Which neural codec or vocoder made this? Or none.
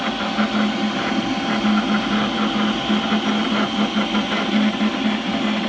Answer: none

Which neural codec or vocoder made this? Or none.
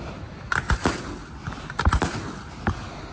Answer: none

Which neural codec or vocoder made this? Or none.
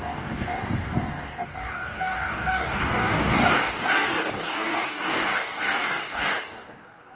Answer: codec, DAC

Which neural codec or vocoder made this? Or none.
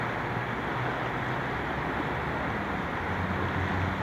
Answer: none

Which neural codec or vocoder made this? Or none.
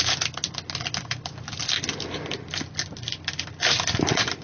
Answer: none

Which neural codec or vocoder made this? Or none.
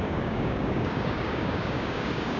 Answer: codec, DAC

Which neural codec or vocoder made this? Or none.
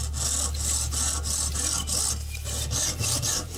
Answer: none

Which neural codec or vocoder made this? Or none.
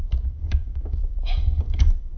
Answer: codec, DAC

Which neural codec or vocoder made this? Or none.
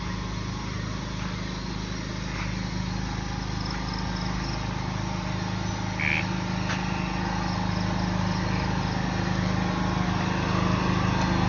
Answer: none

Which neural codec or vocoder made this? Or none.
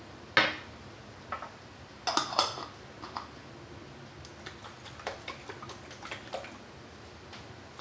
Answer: none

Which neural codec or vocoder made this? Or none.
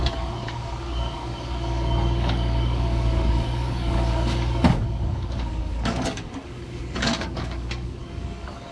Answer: codec, DAC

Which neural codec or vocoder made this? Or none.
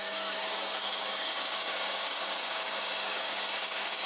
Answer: codec, DAC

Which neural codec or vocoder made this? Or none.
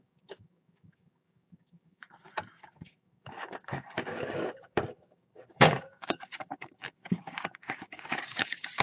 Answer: codec, DAC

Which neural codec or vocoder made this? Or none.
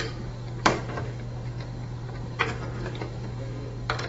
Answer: codec, DAC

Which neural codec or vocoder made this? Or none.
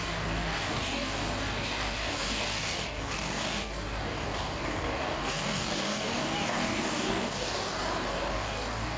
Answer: codec, DAC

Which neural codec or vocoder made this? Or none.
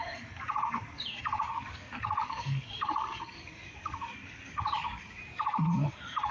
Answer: codec, DAC